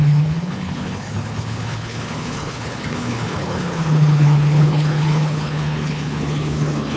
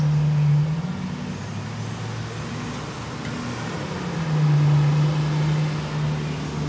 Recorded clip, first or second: second